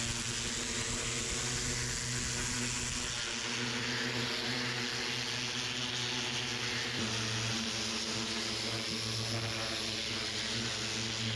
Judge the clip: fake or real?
real